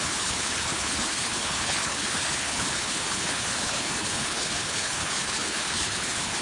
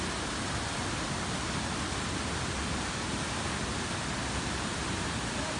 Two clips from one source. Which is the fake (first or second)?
first